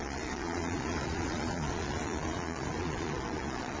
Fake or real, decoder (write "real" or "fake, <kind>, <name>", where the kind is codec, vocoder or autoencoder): fake, vocoder, Vocos